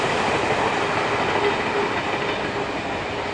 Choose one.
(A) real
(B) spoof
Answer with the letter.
A